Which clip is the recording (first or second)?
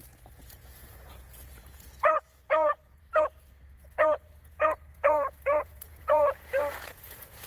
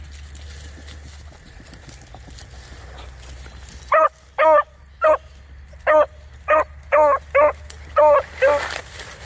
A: second